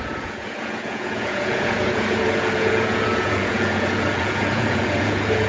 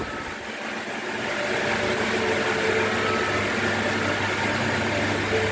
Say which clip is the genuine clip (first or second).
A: second